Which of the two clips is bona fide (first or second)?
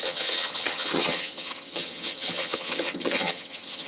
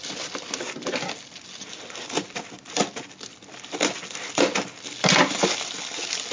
second